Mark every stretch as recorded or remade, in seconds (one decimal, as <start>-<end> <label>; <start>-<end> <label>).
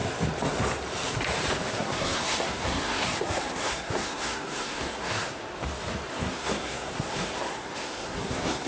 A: 0.0-1.7 recorded; 1.7-5.4 remade; 5.4-6.1 recorded; 6.1-8.7 remade